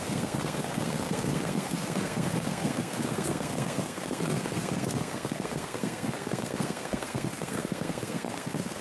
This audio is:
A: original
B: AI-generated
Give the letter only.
B